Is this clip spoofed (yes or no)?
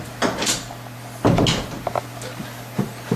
no